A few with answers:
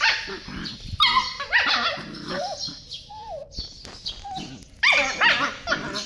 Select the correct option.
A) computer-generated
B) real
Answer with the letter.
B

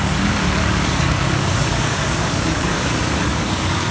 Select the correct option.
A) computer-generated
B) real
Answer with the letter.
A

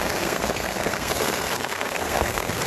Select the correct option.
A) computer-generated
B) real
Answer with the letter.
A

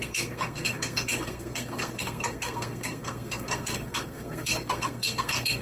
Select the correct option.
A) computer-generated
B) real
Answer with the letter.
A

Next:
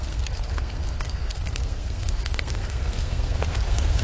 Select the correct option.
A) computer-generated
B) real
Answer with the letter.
A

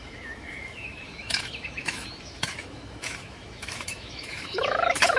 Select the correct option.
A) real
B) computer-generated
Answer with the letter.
B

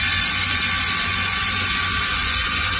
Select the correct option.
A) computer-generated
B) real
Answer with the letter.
A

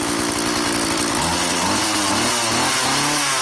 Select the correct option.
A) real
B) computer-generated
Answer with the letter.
A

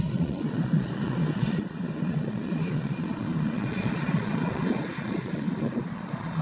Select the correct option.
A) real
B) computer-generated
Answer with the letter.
B